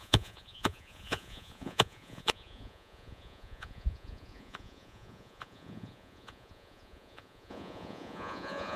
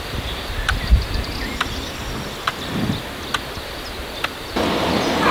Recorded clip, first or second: second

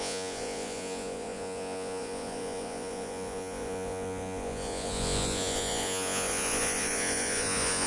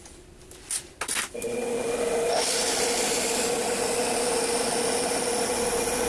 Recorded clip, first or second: second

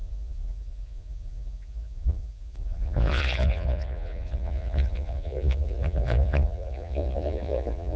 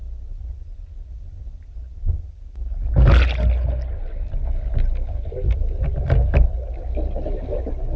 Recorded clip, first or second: second